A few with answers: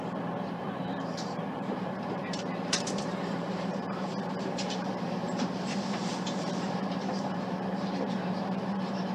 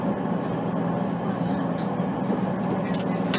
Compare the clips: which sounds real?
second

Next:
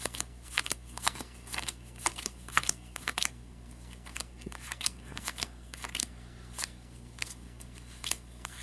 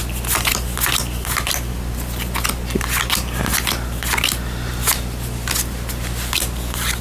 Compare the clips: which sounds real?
second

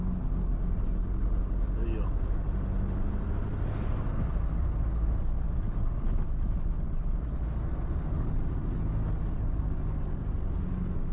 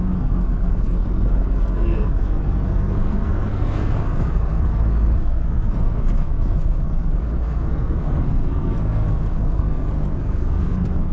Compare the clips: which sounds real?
first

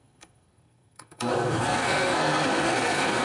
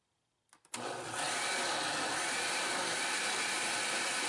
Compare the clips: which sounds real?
second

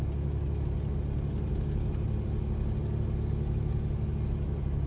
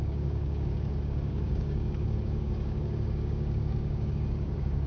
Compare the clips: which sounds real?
first